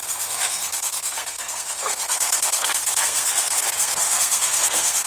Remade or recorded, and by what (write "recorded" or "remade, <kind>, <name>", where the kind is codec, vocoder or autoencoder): remade, codec, SNAC